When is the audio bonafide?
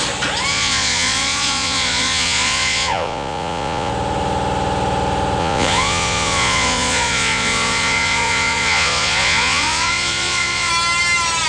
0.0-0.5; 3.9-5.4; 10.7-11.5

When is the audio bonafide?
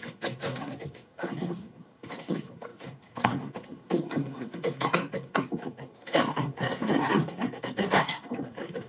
none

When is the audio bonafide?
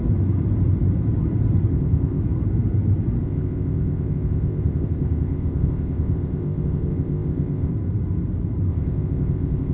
0.0-1.7; 2.2-3.2; 7.7-8.7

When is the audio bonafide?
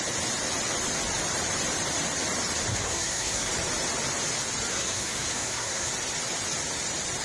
0.0-2.7; 3.5-4.7; 5.9-7.2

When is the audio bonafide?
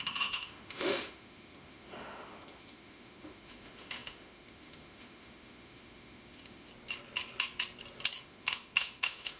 6.7-8.2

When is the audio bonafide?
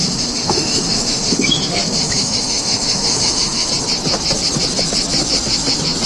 3.7-6.1